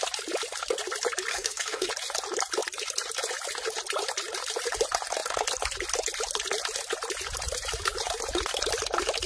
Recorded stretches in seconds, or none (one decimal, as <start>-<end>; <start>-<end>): 0.0-1.3; 1.9-9.3